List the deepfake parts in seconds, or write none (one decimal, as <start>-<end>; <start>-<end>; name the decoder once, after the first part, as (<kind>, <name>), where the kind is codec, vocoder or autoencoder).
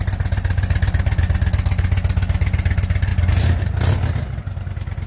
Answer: none